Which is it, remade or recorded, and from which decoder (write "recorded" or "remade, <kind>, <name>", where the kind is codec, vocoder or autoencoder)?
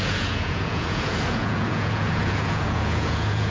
remade, vocoder, Vocos